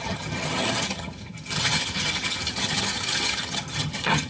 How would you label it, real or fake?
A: fake